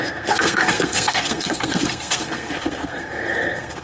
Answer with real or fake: fake